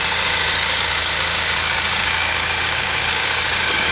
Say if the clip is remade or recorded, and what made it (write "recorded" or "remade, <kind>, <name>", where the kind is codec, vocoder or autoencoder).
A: remade, codec, DAC